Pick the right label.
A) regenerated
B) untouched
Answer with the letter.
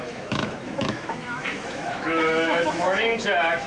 A